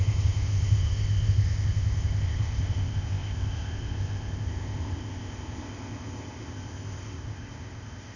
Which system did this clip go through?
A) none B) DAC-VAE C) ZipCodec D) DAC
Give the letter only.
C